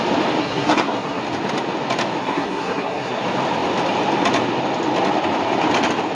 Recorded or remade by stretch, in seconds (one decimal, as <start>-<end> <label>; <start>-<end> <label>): 0.0-0.4 recorded; 0.4-1.2 remade; 1.2-2.2 recorded; 2.2-3.2 remade; 3.2-6.1 recorded